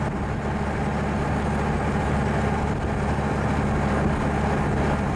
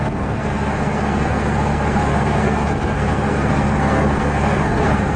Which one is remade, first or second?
second